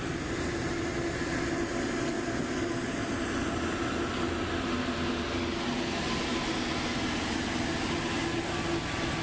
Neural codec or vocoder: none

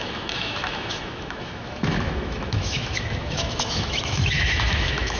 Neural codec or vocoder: autoencoder, DAC-VAE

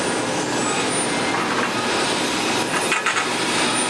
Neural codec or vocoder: none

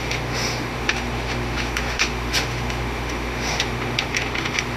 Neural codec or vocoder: autoencoder, DAC-VAE